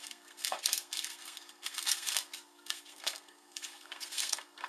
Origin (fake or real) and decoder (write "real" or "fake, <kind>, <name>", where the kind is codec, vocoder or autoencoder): fake, codec, SNAC